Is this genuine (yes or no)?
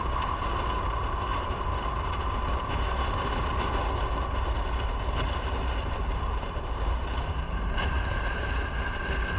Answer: no